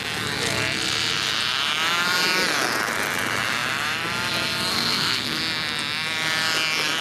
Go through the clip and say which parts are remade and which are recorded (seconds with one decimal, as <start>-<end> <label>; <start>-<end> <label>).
0.0-4.7 recorded; 4.7-5.4 remade; 5.4-7.0 recorded